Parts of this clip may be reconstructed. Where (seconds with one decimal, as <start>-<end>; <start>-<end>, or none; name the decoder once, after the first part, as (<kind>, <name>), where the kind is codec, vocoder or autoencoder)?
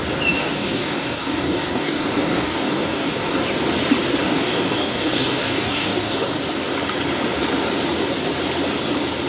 0.4-3.4 (codec, DAC); 4.2-6.4